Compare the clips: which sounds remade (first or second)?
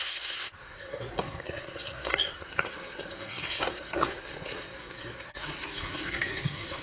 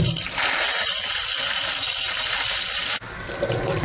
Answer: first